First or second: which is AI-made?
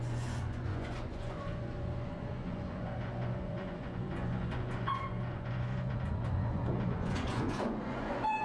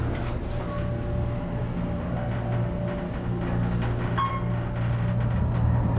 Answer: first